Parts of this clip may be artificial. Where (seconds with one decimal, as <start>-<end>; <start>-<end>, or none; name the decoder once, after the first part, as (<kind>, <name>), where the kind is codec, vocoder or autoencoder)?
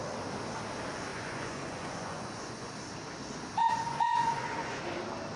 1.1-2.7 (vocoder, Vocos); 3.6-4.8